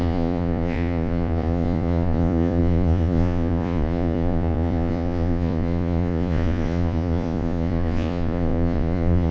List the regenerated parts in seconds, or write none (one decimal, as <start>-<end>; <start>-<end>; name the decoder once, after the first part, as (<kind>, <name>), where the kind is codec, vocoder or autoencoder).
0.0-9.3 (vocoder, Vocos)